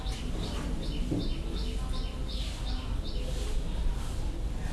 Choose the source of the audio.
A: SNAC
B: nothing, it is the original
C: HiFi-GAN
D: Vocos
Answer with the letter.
B